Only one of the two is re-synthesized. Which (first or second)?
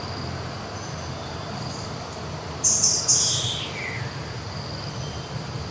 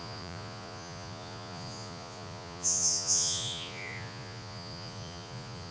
second